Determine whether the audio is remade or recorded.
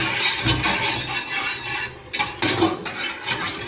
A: recorded